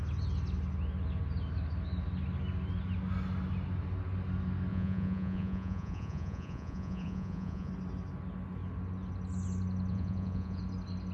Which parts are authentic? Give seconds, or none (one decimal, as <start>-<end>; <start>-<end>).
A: 0.0-4.7; 7.7-9.9; 10.6-11.1

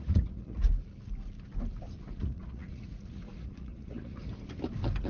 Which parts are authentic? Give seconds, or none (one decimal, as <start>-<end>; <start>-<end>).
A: 0.6-2.0; 4.2-5.1

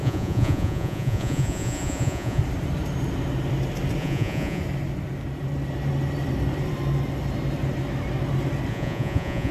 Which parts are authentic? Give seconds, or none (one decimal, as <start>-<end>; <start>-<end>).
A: 2.4-4.0; 4.6-8.7

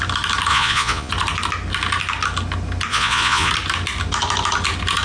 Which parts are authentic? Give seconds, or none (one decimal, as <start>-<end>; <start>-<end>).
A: 0.0-0.5; 1.1-2.9; 3.5-5.0

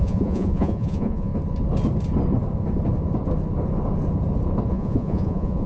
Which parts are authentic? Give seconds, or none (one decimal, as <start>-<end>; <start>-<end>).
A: 1.3-4.7

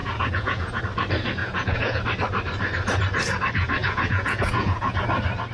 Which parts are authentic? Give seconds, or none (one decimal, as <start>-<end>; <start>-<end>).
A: 0.8-1.4; 2.0-3.8; 5.0-5.5

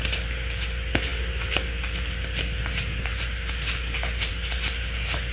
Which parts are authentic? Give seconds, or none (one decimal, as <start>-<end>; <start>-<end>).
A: 0.0-5.3